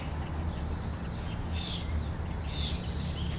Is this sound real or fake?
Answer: real